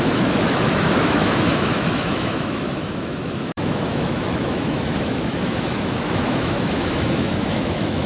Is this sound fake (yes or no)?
yes